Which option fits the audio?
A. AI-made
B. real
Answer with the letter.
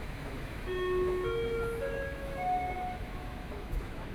A